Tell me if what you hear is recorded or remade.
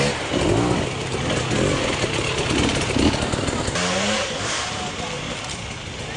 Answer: recorded